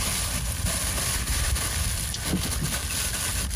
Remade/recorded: recorded